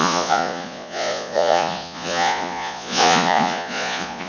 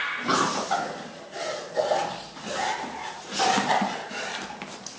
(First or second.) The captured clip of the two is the second